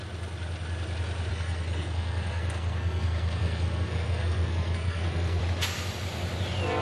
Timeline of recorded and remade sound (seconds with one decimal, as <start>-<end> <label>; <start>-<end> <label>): 0.0-1.3 recorded; 1.3-5.4 remade; 5.4-6.8 recorded